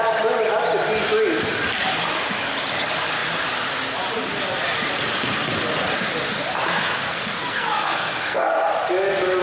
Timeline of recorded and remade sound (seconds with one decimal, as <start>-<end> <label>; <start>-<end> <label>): 0.0-7.1 recorded; 7.1-8.7 remade; 8.7-9.4 recorded